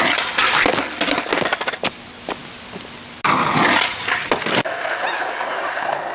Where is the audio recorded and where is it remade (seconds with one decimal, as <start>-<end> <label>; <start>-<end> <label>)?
0.0-6.1 recorded